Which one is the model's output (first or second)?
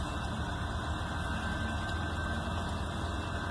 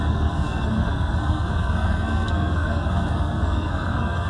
second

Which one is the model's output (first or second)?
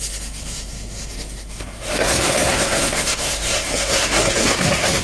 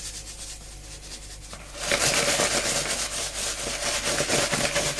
first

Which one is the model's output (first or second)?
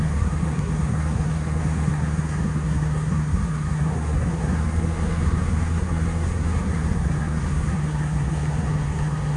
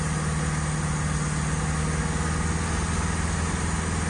first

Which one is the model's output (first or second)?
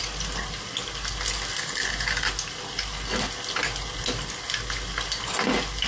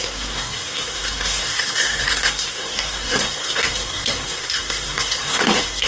second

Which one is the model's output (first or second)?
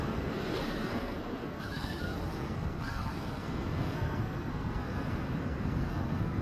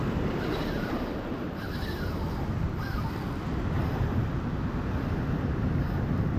first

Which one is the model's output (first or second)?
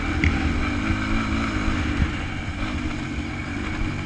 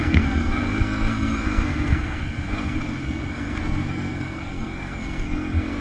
second